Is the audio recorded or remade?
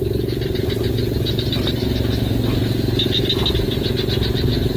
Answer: recorded